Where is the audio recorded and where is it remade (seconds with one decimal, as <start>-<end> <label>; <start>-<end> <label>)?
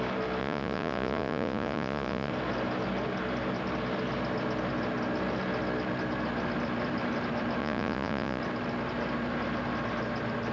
0.0-0.4 recorded; 0.4-2.3 remade; 2.3-7.6 recorded; 7.6-8.4 remade; 8.4-10.5 recorded